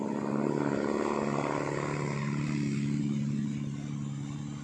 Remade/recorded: recorded